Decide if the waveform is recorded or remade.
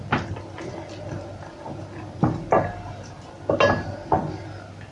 recorded